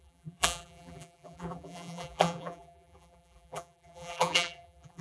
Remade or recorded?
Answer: remade